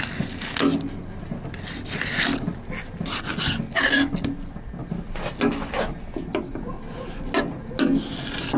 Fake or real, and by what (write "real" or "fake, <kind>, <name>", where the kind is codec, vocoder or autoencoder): real